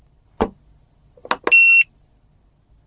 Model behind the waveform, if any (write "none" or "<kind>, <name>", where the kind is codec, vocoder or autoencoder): none